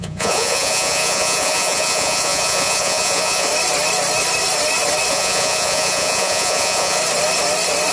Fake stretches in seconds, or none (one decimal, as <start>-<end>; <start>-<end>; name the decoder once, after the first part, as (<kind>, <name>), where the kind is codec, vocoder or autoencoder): 0.0-3.5 (vocoder, Vocos); 5.1-7.0